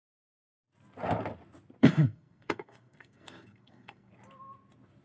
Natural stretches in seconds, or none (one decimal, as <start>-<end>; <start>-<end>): 0.0-1.8; 4.1-5.0